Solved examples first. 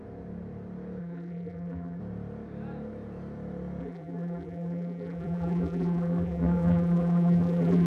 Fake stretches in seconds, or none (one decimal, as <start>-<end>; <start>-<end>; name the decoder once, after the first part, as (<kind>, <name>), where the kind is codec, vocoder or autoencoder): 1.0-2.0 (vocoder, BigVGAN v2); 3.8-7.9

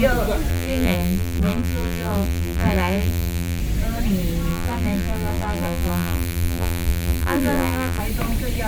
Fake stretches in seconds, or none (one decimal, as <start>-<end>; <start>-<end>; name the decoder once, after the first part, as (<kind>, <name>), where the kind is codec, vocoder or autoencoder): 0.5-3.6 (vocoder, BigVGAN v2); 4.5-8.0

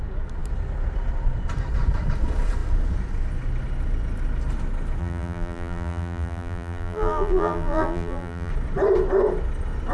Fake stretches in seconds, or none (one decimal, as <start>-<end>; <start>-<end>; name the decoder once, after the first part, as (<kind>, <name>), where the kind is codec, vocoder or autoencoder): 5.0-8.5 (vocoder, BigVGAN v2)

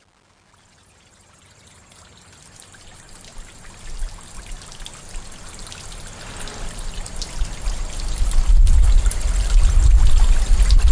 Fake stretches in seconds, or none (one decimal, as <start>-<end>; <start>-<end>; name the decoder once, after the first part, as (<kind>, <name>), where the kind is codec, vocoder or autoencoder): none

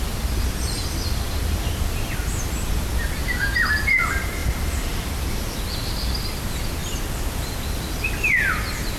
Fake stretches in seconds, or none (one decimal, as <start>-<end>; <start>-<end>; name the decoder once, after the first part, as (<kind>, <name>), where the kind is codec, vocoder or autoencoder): 4.4-5.4 (vocoder, BigVGAN v2)